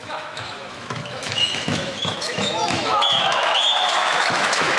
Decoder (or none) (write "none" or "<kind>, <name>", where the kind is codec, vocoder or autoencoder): autoencoder, DAC-VAE